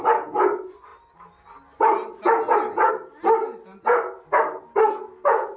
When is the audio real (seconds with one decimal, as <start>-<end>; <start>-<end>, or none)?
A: 0.0-5.6